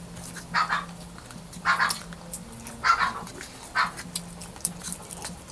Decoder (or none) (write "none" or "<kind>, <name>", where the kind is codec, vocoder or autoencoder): none